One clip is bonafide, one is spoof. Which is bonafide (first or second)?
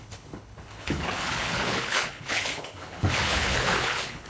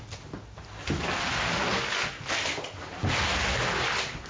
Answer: second